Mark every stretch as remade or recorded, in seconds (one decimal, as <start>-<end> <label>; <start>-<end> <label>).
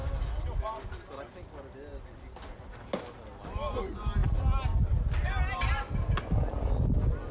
0.0-7.3 recorded